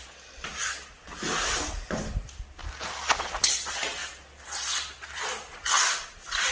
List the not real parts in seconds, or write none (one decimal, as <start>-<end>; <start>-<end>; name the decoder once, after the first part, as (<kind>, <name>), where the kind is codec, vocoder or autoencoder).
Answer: 2.6-3.2 (vocoder, BigVGAN v2); 4.0-5.2